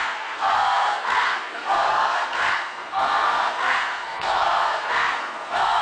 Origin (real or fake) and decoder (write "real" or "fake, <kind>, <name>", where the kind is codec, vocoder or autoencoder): fake, codec, SNAC